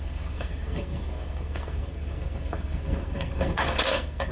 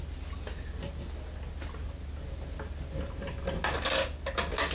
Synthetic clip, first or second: first